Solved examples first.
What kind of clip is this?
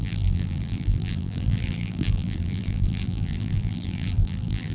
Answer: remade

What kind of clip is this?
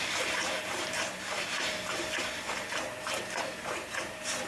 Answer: remade